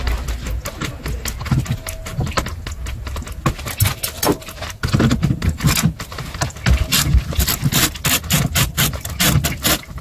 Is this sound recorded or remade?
recorded